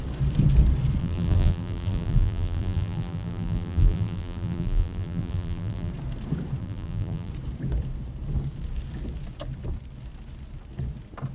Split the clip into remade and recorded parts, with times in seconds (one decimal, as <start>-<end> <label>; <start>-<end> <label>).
0.0-1.0 recorded; 1.0-5.9 remade; 5.9-6.6 recorded; 6.6-7.3 remade; 7.3-11.3 recorded